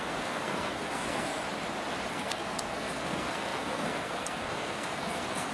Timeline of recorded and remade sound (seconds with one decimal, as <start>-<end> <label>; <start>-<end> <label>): 0.0-1.3 remade; 1.3-2.1 recorded; 2.1-5.5 remade